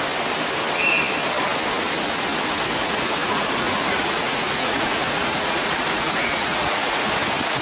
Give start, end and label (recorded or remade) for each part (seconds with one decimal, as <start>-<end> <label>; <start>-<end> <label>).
0.0-2.8 recorded; 2.8-7.1 remade; 7.1-7.6 recorded